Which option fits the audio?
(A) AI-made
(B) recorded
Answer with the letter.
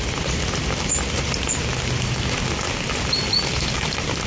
B